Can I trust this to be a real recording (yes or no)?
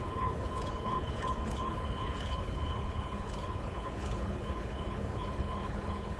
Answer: no